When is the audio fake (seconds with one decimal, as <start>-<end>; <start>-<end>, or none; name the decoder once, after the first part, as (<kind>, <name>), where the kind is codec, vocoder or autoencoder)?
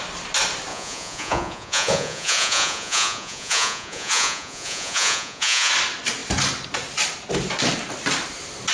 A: 0.7-5.7 (vocoder, Vocos)